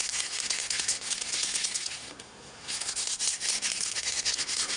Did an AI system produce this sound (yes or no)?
yes